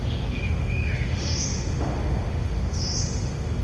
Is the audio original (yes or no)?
no